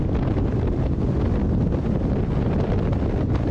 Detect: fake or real real